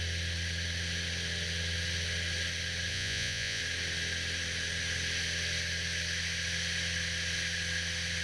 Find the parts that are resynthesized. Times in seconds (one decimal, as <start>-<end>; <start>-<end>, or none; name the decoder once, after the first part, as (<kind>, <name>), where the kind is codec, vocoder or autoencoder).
2.9-3.6 (vocoder, Vocos)